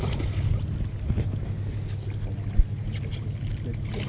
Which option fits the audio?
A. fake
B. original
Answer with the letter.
B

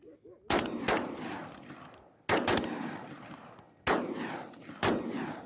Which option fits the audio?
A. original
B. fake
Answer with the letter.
A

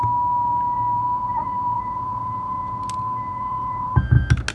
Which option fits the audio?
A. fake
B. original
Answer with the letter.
B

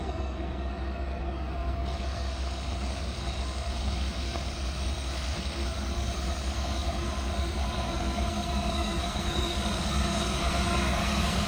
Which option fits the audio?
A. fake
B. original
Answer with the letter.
A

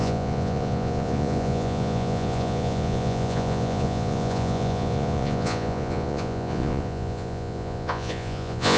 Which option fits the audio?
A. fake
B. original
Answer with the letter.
A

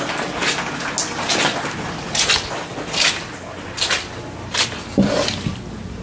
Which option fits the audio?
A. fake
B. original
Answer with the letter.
B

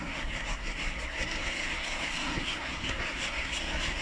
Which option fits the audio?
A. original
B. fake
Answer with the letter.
B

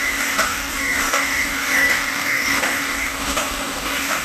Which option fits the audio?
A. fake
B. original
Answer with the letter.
A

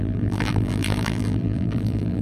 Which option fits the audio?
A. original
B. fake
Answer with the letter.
B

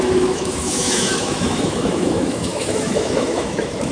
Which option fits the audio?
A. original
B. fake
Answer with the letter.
B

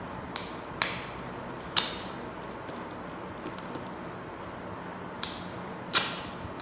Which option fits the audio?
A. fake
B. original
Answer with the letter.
B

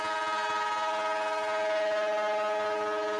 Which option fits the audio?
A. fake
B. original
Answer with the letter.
B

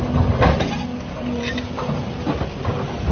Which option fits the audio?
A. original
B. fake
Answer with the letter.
A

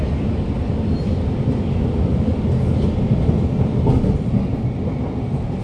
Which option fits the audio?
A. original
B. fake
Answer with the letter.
A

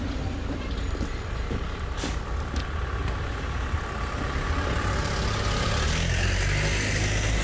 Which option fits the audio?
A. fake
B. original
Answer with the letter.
B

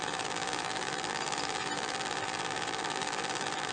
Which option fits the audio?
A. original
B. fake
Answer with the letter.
B